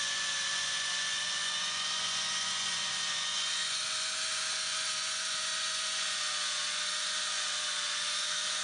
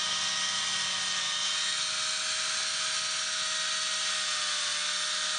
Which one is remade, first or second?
first